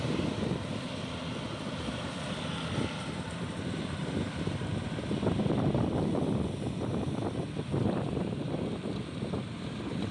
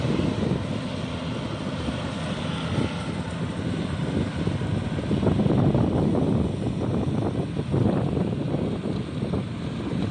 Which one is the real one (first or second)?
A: second